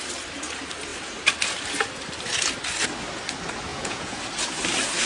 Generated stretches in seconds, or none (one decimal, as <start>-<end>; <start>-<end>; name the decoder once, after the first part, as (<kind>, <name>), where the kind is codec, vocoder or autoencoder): 3.7-4.2 (vocoder, Vocos)